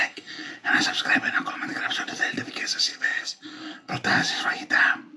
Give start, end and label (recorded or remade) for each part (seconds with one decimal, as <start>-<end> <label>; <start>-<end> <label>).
0.0-0.5 remade; 0.5-2.9 recorded; 2.9-3.9 remade; 3.9-5.2 recorded